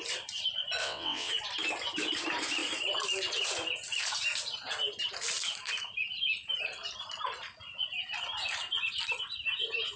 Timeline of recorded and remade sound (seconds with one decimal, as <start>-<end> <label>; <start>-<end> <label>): 0.0-0.8 recorded; 0.8-1.3 remade; 1.3-10.0 recorded